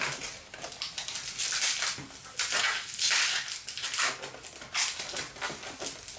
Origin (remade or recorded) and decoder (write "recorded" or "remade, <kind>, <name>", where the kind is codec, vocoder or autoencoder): recorded